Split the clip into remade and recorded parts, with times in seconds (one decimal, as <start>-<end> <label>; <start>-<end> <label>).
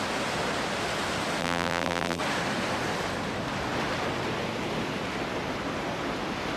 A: 0.0-1.4 recorded; 1.4-2.2 remade; 2.2-6.6 recorded